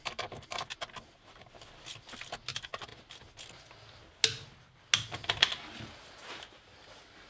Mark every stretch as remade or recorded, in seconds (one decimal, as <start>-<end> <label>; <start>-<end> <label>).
0.0-7.3 recorded